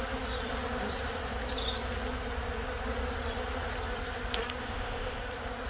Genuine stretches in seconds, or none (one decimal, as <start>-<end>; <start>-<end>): 0.0-4.6; 5.2-5.7